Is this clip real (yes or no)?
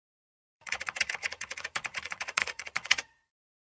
no